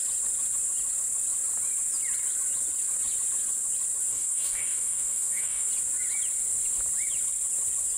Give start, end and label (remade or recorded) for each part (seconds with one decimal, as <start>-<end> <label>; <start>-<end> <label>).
0.0-4.1 recorded; 4.1-5.7 remade; 5.7-8.0 recorded